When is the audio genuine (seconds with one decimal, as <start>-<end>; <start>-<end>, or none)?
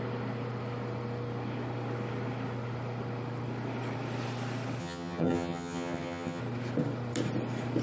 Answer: 0.0-4.8; 6.4-7.8